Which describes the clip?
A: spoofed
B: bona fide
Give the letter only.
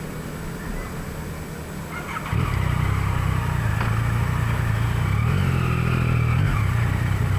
B